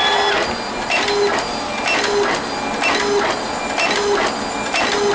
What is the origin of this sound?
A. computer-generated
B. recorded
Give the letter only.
B